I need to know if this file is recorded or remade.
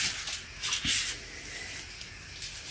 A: recorded